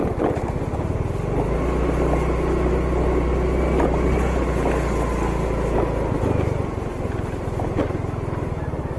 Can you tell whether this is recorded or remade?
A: recorded